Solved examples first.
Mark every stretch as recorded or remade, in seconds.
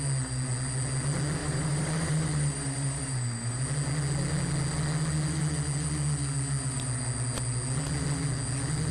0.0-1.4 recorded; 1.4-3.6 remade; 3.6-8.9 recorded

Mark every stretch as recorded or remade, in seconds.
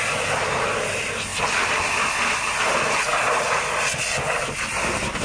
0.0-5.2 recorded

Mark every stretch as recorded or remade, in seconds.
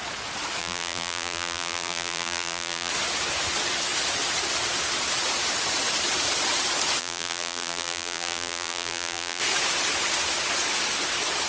0.0-0.6 recorded; 0.6-2.9 remade; 2.9-7.0 recorded; 7.0-9.4 remade; 9.4-11.5 recorded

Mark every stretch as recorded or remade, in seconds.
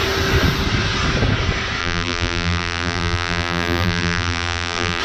0.0-1.8 recorded; 1.8-5.0 remade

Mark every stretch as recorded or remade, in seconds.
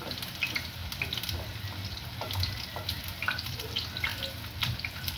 0.0-0.8 remade; 0.8-2.9 recorded; 2.9-4.1 remade; 4.1-4.6 recorded; 4.6-5.2 remade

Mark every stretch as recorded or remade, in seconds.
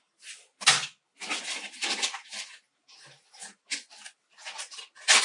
0.0-5.2 recorded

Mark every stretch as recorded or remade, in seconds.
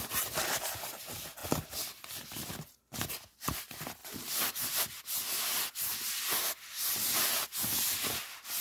0.0-4.0 recorded; 4.0-4.7 remade; 4.7-8.6 recorded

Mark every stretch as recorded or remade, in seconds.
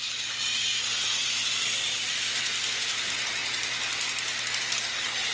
0.0-1.2 recorded; 1.2-2.9 remade; 2.9-5.3 recorded